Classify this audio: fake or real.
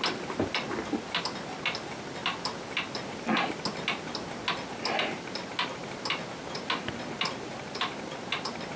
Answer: real